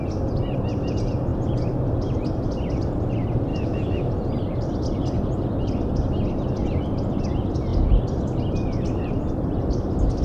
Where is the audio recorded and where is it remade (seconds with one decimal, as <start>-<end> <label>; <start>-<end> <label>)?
0.0-3.5 recorded; 3.5-4.1 remade; 4.1-10.2 recorded